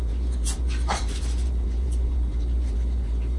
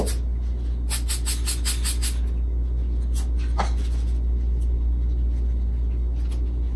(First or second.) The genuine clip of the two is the second